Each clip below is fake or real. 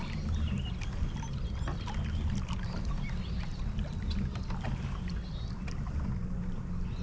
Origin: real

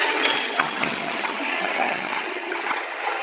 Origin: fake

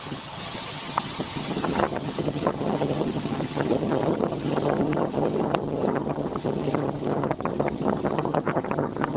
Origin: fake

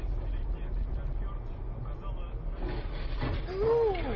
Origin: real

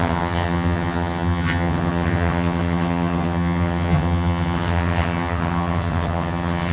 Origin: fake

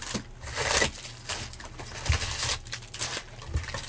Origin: real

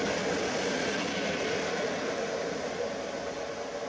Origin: real